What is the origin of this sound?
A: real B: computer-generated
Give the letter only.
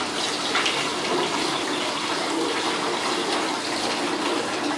A